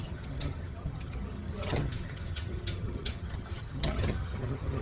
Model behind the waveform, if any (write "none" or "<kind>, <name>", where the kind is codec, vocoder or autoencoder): vocoder, HiFi-GAN